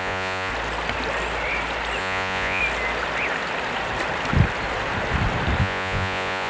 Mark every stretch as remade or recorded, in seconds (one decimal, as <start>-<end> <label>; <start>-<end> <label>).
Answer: 0.0-0.5 remade; 0.5-2.0 recorded; 2.0-2.6 remade; 2.6-5.6 recorded; 5.6-6.5 remade